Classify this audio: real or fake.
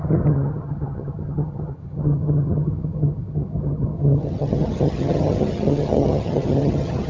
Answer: fake